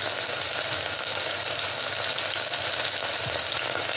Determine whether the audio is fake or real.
real